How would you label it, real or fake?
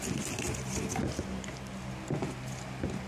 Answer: real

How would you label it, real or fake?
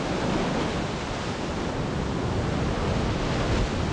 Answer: real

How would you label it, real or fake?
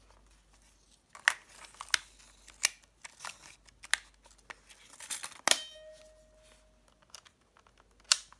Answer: real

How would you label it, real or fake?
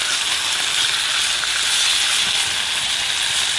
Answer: real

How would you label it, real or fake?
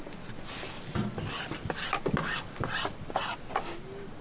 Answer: real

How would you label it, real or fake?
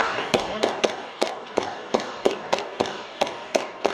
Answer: fake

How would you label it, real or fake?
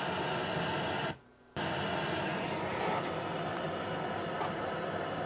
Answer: real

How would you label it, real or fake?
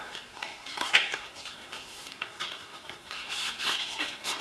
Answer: fake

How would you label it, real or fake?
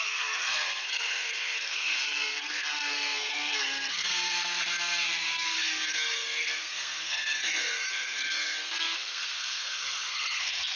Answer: fake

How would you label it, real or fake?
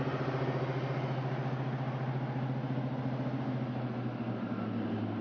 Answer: real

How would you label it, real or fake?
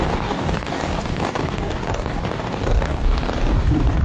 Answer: fake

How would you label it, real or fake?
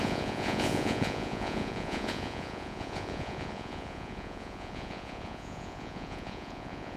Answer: fake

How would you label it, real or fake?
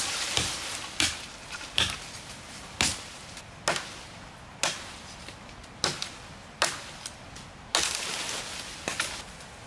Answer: real